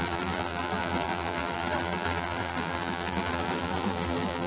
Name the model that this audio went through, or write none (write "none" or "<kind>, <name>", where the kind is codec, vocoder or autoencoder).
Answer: vocoder, BigVGAN v2